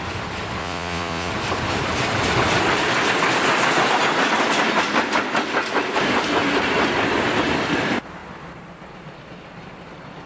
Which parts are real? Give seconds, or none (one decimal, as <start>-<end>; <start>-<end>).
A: 0.0-0.6; 1.3-10.3